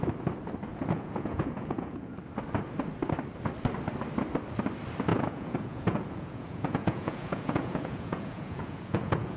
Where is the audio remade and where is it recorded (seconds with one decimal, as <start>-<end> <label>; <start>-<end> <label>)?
0.0-0.7 recorded; 0.7-2.2 remade; 2.2-5.1 recorded; 5.1-9.4 remade